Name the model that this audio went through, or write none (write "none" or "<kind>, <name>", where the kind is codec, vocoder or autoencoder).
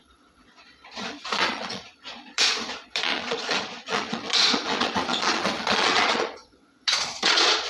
vocoder, Vocos